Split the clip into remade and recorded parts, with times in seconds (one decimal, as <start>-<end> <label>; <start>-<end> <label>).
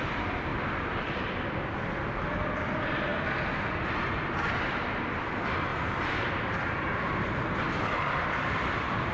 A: 0.0-3.1 remade; 3.1-3.8 recorded; 3.8-5.7 remade; 5.7-6.3 recorded; 6.3-9.1 remade